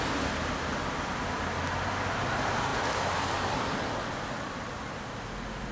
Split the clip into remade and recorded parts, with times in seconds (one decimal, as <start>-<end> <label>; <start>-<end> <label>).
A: 0.0-5.7 recorded